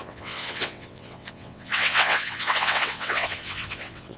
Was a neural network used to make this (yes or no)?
yes